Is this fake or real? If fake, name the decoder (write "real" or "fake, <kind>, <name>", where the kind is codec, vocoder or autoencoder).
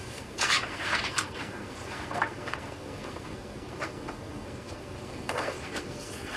fake, codec, SNAC